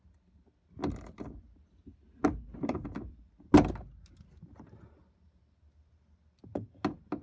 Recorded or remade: recorded